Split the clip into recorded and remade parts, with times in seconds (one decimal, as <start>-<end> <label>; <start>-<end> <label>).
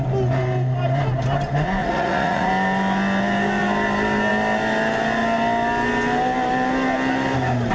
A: 0.0-1.8 recorded; 1.8-2.5 remade; 2.5-7.7 recorded